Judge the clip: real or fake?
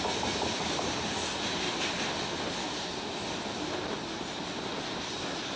real